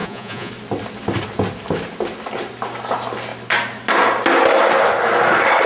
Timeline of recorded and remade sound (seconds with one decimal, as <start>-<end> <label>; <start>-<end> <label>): 0.0-0.5 remade; 0.5-5.7 recorded